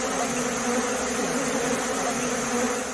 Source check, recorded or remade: recorded